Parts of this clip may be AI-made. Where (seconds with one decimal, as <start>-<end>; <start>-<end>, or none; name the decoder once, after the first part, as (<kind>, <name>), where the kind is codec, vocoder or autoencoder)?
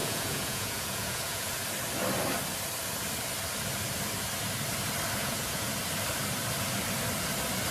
0.0-1.6 (vocoder, Vocos); 5.2-5.8